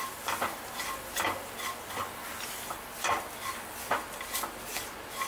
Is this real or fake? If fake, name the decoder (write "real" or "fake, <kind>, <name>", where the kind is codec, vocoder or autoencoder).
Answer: real